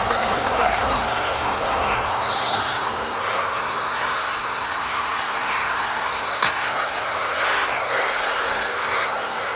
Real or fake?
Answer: fake